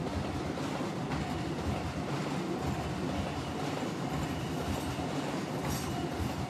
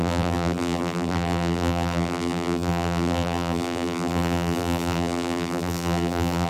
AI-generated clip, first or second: second